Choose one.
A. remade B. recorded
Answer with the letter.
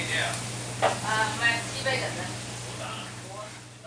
B